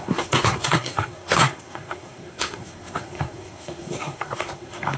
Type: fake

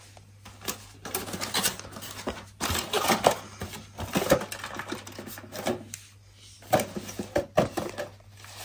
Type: real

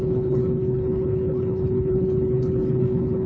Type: fake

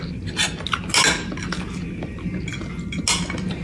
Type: real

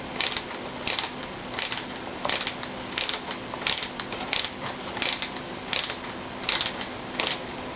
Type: real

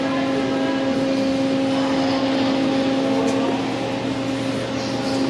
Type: real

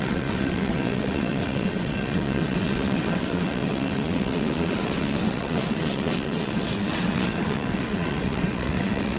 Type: fake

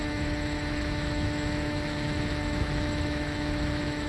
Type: fake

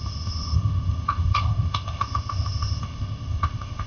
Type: fake